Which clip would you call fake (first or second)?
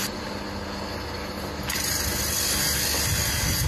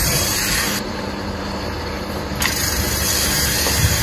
second